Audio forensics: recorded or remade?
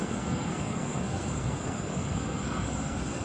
remade